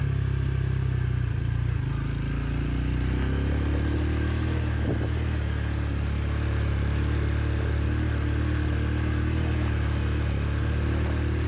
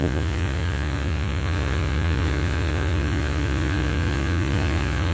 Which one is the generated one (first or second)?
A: second